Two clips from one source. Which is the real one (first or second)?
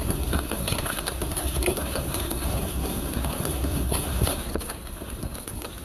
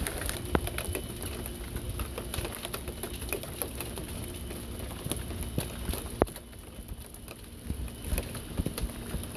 second